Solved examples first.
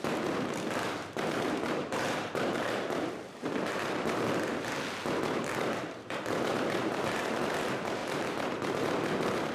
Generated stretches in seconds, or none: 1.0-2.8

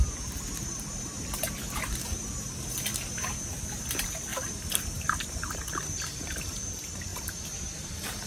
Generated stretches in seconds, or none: 4.3-5.3; 7.1-8.3

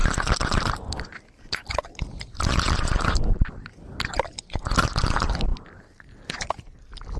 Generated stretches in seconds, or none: none